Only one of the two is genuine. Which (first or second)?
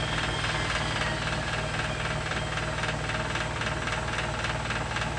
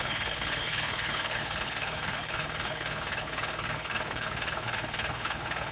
first